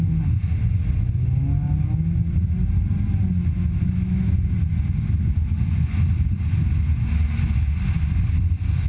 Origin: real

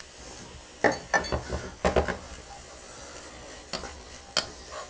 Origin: real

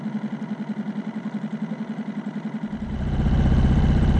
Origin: real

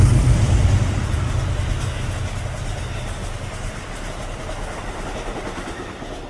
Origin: real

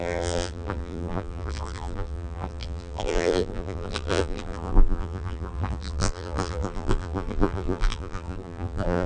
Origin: fake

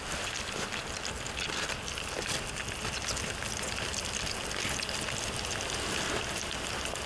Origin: real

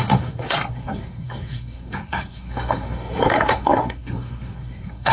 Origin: fake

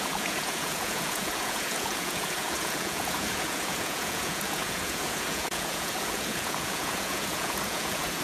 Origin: fake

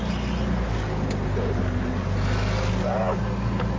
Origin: real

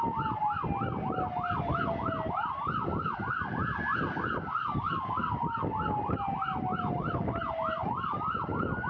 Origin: real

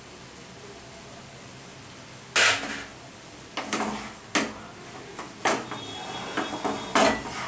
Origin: real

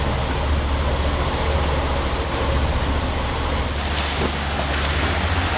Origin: real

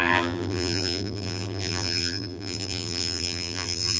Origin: fake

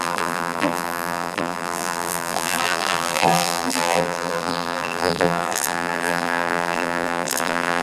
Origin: fake